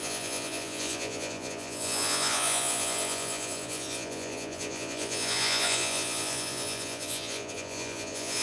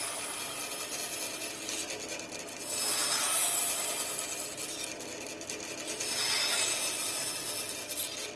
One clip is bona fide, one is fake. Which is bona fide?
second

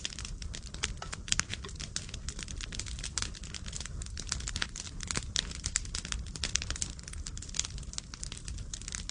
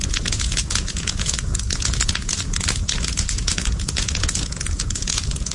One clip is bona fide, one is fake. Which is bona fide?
first